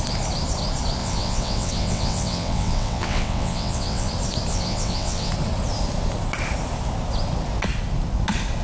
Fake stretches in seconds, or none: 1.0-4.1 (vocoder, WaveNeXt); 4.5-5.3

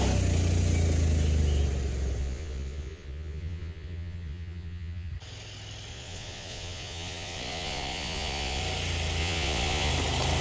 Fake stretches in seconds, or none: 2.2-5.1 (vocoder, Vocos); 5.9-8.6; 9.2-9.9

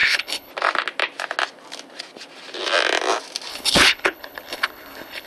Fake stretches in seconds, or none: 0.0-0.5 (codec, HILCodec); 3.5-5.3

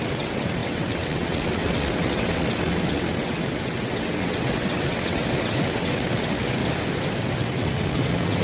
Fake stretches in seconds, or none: 0.0-6.6 (vocoder, WaveNeXt); 7.2-8.4